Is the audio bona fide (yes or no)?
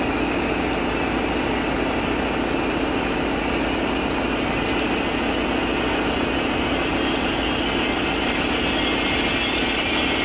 yes